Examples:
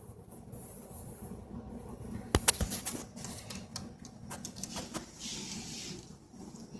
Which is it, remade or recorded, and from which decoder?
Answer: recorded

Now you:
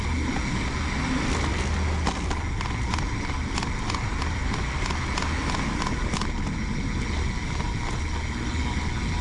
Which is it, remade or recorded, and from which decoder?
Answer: recorded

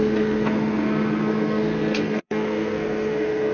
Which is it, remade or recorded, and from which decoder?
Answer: remade, codec, SNAC